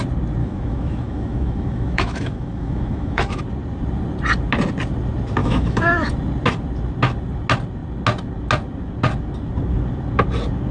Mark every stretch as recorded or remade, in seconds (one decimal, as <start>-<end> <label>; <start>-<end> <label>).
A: 0.0-0.4 recorded; 0.4-3.4 remade; 3.4-5.4 recorded; 5.4-6.1 remade; 6.1-10.7 recorded